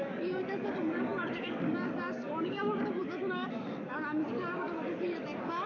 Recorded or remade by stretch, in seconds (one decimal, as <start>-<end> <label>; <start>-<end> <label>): 0.0-5.7 remade